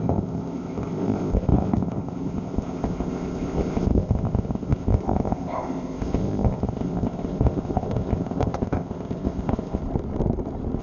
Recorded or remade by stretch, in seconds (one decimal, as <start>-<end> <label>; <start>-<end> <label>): 0.0-9.8 remade; 9.8-10.8 recorded